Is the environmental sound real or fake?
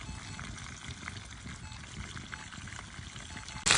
real